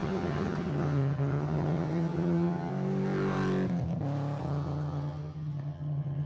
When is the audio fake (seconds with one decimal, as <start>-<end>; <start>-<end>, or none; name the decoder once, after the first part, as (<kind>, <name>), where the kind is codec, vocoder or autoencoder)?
0.0-2.7 (vocoder, HiFi-GAN); 4.4-6.3